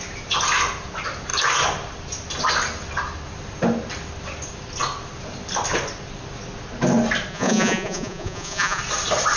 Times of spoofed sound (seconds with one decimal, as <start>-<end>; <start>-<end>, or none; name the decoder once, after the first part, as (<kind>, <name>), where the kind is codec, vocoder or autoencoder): 7.3-8.8 (vocoder, Vocos)